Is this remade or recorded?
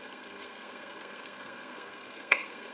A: remade